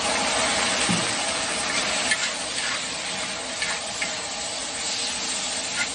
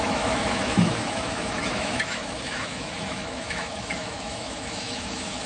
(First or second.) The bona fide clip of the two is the first